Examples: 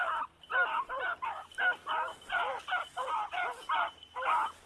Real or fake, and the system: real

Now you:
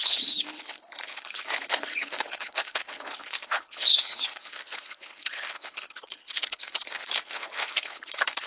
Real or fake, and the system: fake, codec, HILCodec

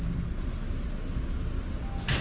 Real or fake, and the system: real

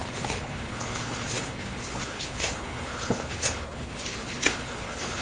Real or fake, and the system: fake, codec, HILCodec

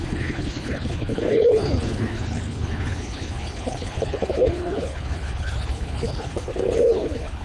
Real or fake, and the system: fake, codec, HILCodec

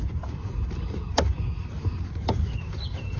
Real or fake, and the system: real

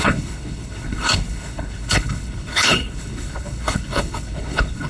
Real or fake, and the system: fake, codec, HILCodec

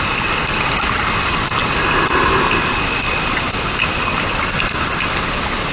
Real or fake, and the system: real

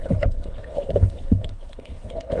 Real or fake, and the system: fake, codec, HILCodec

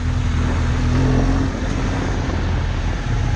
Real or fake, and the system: real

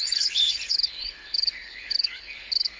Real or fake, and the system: fake, codec, HILCodec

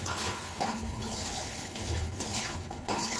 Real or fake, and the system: fake, codec, HILCodec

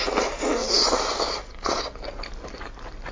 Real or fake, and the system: real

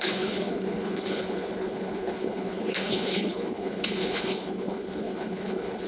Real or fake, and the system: fake, codec, HILCodec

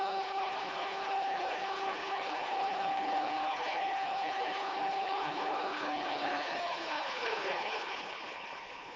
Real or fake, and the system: fake, codec, HILCodec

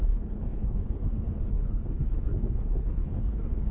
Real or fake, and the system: fake, codec, HILCodec